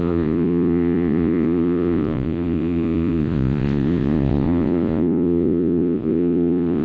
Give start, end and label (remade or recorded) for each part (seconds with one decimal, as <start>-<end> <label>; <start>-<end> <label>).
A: 0.0-6.8 remade

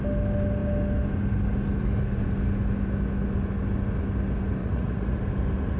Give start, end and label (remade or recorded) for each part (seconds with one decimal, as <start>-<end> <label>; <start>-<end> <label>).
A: 0.0-4.6 recorded; 4.6-5.2 remade; 5.2-5.8 recorded

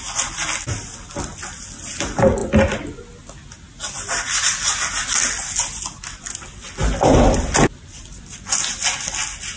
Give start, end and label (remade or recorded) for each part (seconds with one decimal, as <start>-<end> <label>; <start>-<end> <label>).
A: 0.0-9.6 recorded

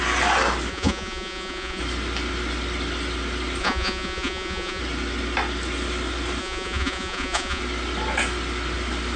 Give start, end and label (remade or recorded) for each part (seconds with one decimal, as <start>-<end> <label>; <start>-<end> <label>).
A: 0.0-0.7 recorded; 0.7-1.8 remade; 1.8-3.6 recorded; 3.6-4.8 remade; 4.8-6.4 recorded; 6.4-7.6 remade; 7.6-9.2 recorded

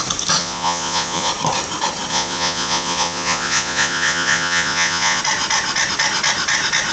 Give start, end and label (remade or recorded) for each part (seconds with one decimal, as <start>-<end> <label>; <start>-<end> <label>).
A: 0.0-0.4 recorded; 0.4-1.3 remade; 1.3-2.1 recorded; 2.1-5.2 remade; 5.2-6.9 recorded

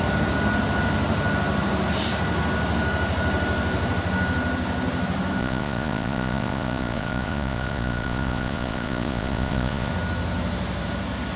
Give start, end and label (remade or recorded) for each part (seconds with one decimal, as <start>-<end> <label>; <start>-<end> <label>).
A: 0.0-5.4 recorded; 5.4-9.9 remade; 9.9-11.4 recorded